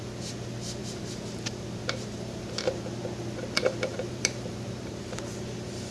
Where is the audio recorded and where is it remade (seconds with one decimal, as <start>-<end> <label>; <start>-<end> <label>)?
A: 0.0-0.8 recorded; 0.8-3.0 remade; 3.0-3.9 recorded; 3.9-5.9 remade